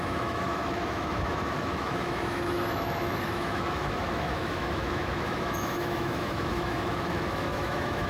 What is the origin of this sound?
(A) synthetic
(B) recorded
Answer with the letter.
A